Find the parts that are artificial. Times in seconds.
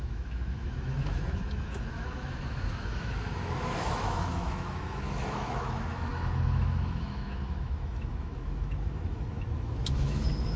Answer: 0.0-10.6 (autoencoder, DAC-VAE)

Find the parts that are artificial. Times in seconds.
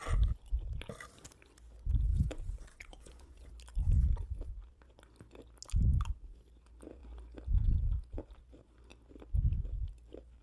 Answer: 2.1-3.5 (vocoder, Vocos)